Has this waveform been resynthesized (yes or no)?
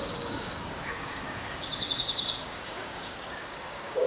yes